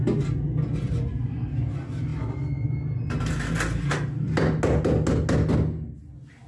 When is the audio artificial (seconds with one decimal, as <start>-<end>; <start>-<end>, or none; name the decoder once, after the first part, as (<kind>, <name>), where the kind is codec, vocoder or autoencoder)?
none